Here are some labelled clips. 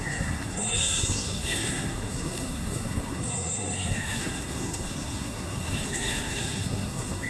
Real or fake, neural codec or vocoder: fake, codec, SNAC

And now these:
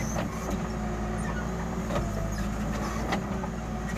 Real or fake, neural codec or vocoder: real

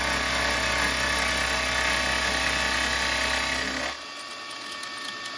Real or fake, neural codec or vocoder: real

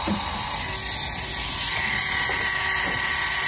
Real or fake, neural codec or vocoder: real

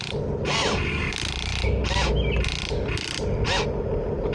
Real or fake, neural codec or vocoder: real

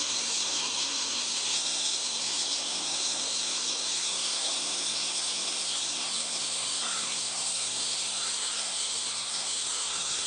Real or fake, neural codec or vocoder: fake, codec, SNAC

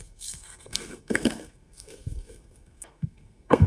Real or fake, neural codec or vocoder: fake, codec, SNAC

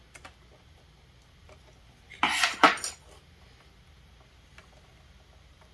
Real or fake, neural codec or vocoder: real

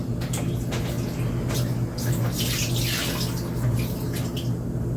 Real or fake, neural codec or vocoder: real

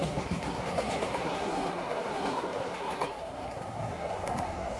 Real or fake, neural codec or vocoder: fake, codec, SNAC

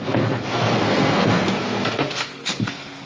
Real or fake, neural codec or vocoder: fake, codec, SNAC